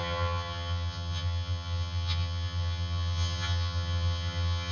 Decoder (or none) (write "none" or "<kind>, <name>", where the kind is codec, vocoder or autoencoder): vocoder, HiFi-GAN